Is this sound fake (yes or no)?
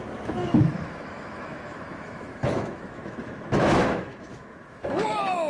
yes